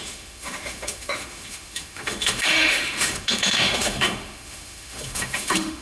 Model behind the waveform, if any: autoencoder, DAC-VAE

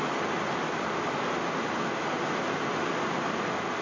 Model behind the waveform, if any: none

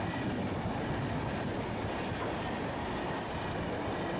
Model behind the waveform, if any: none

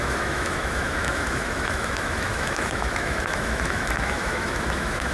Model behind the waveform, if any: autoencoder, DAC-VAE